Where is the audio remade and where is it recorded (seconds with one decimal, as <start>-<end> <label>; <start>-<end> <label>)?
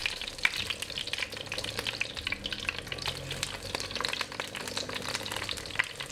0.0-6.1 recorded